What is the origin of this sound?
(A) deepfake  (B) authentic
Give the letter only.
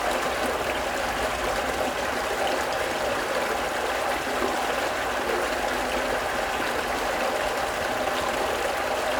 B